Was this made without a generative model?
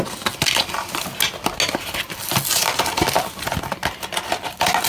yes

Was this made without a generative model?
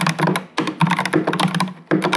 yes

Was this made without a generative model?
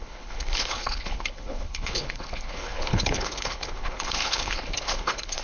no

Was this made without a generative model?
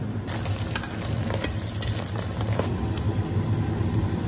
yes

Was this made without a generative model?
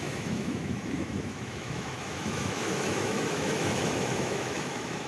no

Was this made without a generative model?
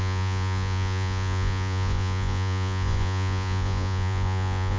no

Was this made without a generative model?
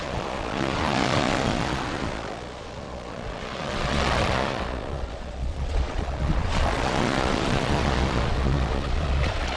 no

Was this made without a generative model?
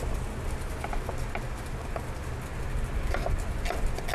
yes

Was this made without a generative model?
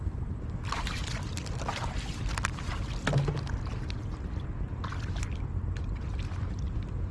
yes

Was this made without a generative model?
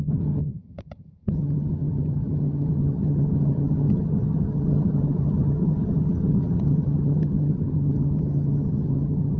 no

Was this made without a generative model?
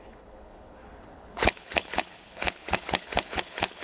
no